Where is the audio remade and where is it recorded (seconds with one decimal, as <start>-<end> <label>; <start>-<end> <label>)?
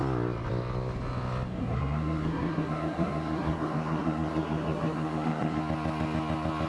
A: 0.0-1.6 recorded; 1.6-5.6 remade; 5.6-6.7 recorded